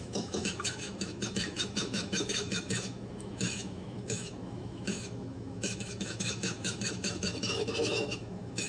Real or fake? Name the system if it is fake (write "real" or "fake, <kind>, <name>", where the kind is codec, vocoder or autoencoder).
fake, autoencoder, DAC-VAE